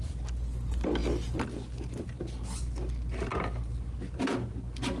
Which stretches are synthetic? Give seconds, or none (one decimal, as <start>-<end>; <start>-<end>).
none